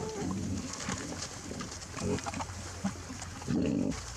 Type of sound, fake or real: real